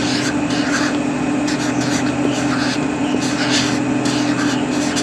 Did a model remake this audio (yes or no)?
no